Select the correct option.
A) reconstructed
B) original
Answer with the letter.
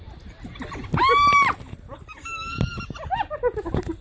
B